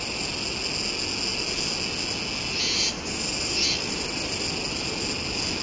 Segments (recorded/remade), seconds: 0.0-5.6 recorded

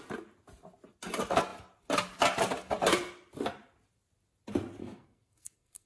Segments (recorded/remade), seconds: 0.0-4.8 recorded; 4.8-5.9 remade